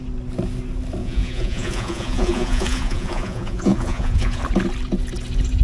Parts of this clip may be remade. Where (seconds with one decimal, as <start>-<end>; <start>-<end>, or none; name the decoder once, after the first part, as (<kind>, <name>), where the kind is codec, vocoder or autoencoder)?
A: 1.0-4.4 (vocoder, Vocos)